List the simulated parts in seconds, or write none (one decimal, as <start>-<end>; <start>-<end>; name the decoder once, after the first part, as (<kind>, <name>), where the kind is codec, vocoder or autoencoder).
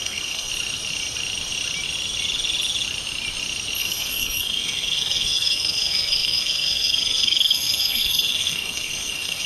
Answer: 0.0-0.5 (codec, SNAC); 3.8-9.5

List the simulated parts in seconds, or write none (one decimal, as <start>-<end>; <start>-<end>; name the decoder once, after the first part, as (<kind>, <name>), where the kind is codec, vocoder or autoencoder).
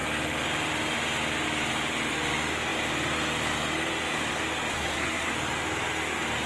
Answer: 4.7-5.3 (codec, SNAC)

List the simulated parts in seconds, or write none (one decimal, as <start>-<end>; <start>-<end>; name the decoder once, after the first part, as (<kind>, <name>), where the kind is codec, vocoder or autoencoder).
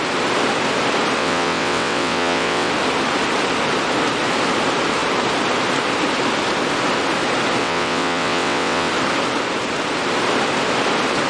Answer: 1.2-2.7 (vocoder, WaveNeXt); 7.6-8.9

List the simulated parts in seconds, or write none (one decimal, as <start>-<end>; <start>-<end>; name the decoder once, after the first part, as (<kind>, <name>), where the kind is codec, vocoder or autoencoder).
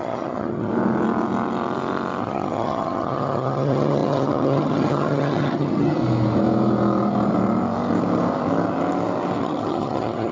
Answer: 0.0-0.7 (vocoder, HiFi-GAN); 2.2-6.0; 9.4-10.3